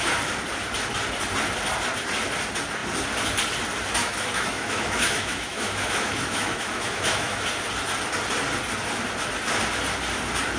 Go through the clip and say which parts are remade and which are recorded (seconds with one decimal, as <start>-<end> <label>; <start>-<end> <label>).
0.0-4.0 recorded; 4.0-7.4 remade; 7.4-10.6 recorded